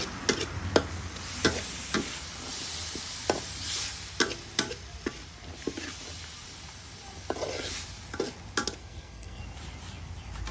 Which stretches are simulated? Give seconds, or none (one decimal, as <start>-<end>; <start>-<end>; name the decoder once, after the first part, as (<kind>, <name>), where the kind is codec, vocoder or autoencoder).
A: 8.8-9.4 (codec, SNAC)